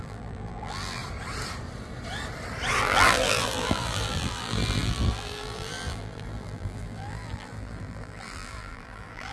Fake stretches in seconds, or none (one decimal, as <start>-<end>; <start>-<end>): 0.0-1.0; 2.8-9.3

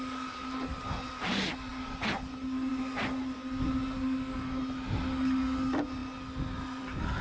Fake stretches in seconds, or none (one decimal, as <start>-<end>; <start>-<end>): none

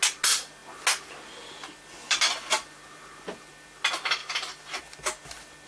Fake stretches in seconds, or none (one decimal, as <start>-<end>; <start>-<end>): 4.2-4.8

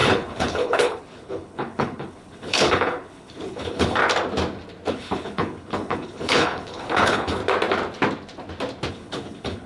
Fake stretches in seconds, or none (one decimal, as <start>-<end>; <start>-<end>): 0.0-4.0; 4.9-7.4; 8.9-9.7

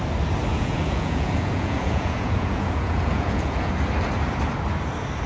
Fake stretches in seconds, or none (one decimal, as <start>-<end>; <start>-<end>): 0.5-3.7

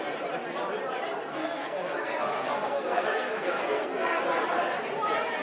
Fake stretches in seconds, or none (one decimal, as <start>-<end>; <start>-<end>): 1.3-4.2